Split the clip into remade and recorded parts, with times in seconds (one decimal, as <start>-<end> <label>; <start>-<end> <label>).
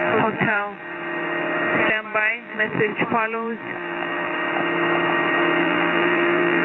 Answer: 0.0-0.8 remade; 0.8-2.3 recorded; 2.3-2.9 remade; 2.9-3.6 recorded; 3.6-4.3 remade; 4.3-5.6 recorded; 5.6-6.6 remade